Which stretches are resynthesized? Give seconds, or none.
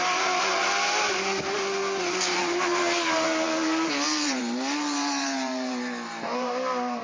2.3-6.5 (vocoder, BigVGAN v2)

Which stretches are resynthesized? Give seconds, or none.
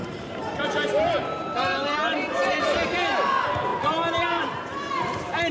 0.0-2.6 (vocoder, BigVGAN v2); 3.7-4.5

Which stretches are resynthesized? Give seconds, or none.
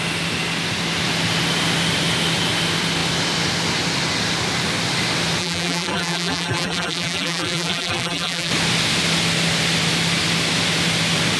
5.4-8.5 (vocoder, BigVGAN v2)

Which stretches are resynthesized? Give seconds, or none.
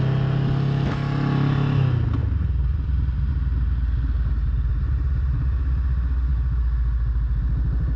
2.2-3.3 (vocoder, BigVGAN v2)